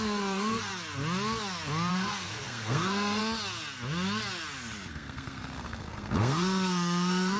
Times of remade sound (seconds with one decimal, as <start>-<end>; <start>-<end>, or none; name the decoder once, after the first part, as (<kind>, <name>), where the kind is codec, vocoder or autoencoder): 0.0-0.7 (codec, SNAC); 1.9-3.2; 4.9-7.4